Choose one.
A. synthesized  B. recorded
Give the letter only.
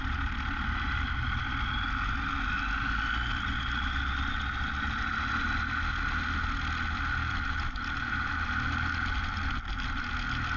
B